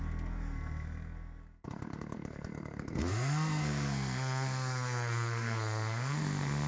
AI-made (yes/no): yes